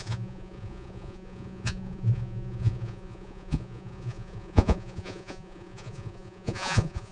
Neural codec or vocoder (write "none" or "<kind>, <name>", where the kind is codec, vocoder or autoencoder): vocoder, Vocos